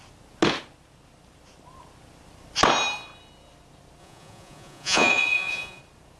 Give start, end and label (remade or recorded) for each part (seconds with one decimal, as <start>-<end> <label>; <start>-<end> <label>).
0.0-4.0 recorded; 4.0-5.8 remade; 5.8-6.2 recorded